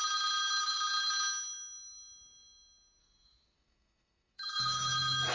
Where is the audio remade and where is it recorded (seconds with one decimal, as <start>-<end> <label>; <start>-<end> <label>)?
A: 0.0-3.0 recorded; 3.0-5.3 remade